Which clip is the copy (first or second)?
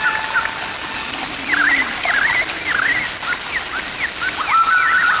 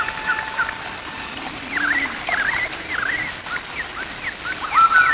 second